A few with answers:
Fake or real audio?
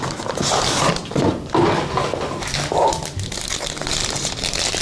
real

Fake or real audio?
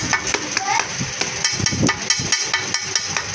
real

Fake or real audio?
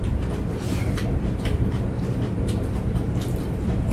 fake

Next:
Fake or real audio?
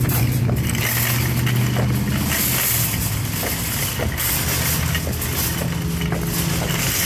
real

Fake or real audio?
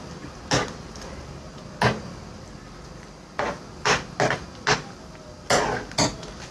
real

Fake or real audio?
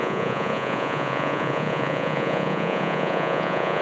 fake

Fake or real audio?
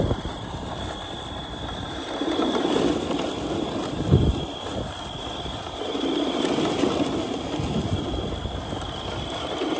real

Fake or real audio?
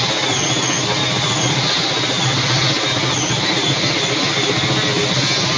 real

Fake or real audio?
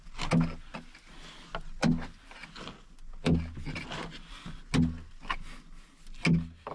real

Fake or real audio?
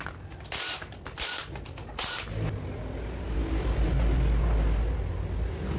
real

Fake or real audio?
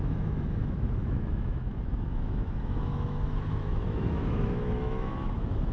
fake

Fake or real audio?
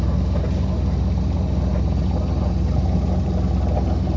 real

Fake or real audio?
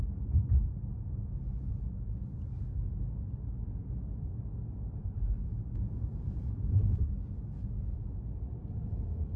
real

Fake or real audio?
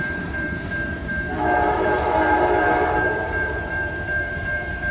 fake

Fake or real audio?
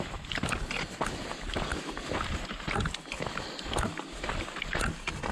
real